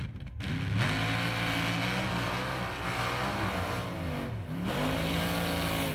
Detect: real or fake real